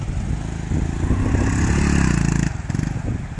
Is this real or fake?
real